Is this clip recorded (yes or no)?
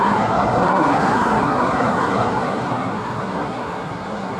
no